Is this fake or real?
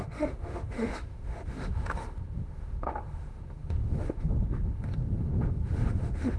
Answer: fake